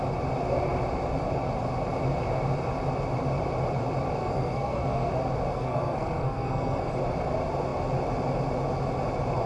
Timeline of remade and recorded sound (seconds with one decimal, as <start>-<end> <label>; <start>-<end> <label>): 0.0-4.2 recorded; 4.2-5.1 remade; 5.1-5.5 recorded; 5.5-6.9 remade; 6.9-9.5 recorded